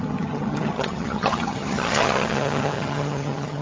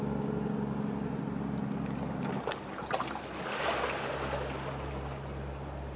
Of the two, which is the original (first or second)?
second